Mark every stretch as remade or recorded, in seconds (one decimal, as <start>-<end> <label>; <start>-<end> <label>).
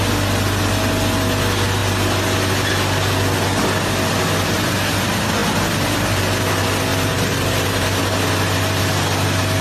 0.0-6.9 recorded; 6.9-8.0 remade; 8.0-9.6 recorded